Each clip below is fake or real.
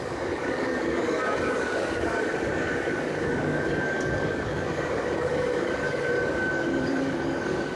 fake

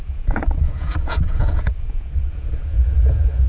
fake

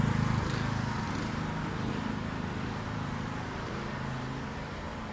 fake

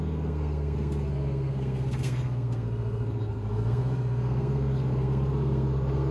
fake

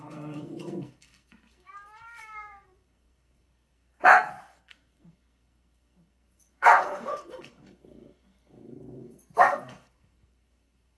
fake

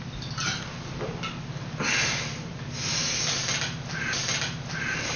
real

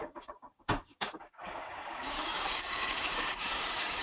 fake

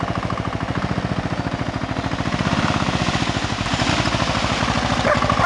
real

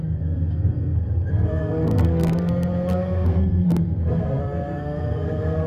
fake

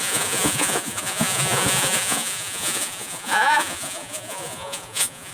fake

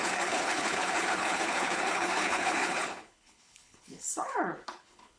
fake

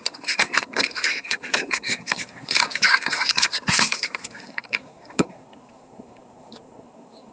fake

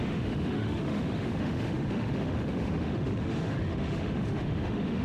fake